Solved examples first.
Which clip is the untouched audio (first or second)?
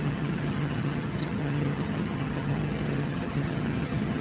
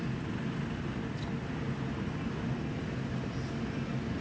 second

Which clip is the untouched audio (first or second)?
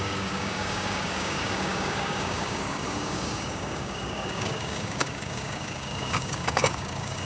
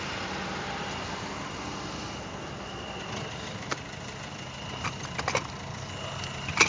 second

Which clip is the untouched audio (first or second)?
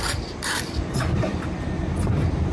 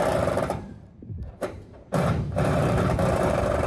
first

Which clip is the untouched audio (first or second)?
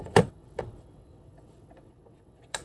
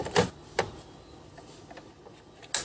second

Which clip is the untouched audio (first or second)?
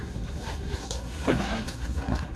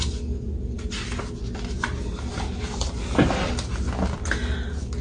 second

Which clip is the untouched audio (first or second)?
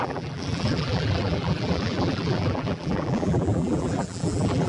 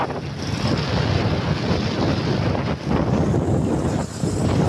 second